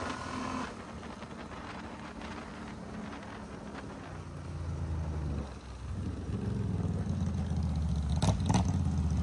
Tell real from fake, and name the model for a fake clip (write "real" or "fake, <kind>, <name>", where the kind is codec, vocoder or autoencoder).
real